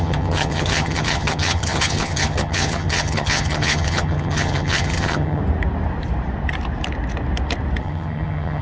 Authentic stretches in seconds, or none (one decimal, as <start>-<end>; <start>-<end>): 5.4-7.8